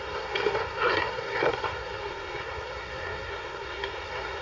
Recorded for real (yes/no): no